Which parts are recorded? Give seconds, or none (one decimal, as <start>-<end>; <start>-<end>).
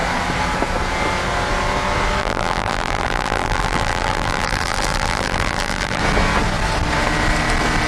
0.0-2.2; 6.0-7.9